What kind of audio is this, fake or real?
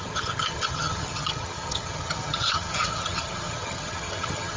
fake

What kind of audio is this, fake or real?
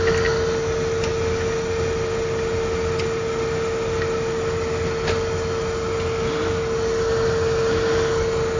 real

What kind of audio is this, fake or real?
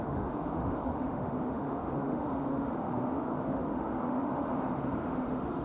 fake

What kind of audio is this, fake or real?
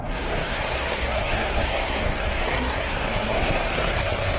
fake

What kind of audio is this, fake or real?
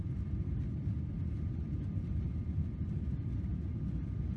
real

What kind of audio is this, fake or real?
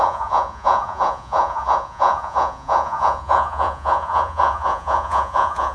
fake